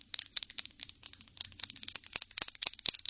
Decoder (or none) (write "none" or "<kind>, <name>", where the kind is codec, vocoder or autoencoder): none